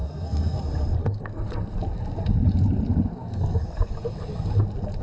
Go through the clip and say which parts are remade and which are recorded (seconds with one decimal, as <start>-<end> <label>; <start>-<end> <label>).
0.0-0.6 remade; 0.6-1.0 recorded; 1.0-1.7 remade; 1.7-3.1 recorded; 3.1-3.9 remade; 3.9-5.0 recorded